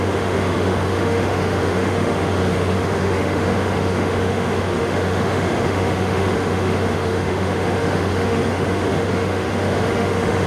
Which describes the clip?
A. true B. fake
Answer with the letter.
B